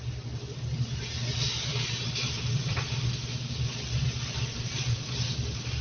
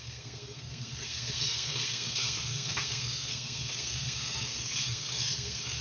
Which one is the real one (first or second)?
first